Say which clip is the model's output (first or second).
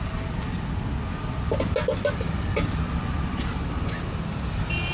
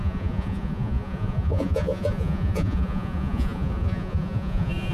second